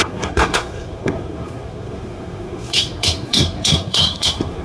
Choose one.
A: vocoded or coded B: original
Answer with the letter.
A